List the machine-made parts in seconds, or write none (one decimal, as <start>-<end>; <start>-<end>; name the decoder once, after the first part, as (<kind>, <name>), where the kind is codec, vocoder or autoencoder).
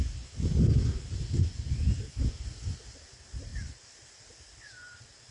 none